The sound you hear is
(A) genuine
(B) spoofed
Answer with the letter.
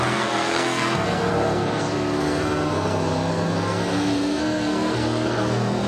B